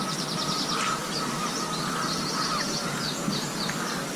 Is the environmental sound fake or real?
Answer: real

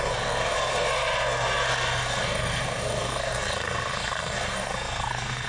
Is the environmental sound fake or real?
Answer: fake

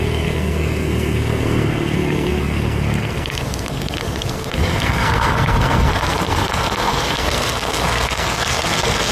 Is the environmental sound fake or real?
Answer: fake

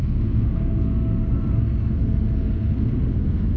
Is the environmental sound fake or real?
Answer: fake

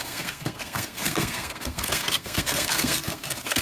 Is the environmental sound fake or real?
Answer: fake